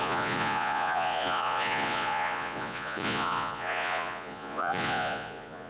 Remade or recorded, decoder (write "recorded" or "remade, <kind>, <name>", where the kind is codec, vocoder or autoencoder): remade, vocoder, Vocos